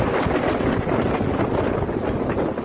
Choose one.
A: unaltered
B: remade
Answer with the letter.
A